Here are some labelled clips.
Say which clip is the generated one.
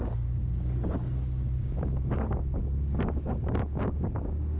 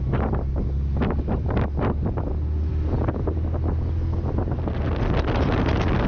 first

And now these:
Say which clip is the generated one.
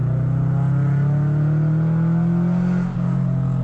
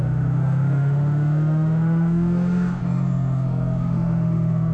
second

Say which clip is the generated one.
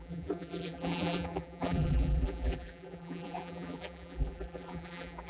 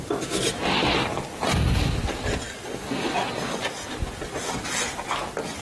first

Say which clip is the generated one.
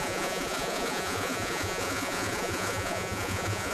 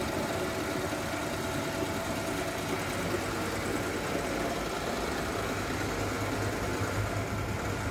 first